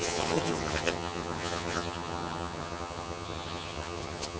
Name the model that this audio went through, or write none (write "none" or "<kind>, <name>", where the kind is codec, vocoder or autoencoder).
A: vocoder, HiFi-GAN